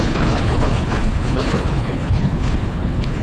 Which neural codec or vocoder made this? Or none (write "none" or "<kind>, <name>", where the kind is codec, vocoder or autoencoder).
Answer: codec, HILCodec